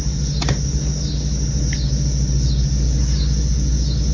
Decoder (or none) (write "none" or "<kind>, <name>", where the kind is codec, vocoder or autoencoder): none